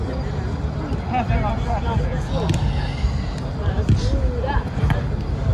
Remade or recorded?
recorded